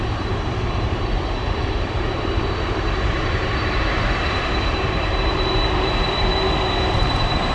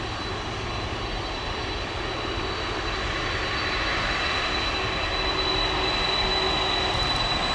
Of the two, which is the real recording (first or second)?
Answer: second